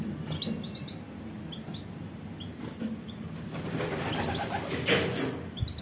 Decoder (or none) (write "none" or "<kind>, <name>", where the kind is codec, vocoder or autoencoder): none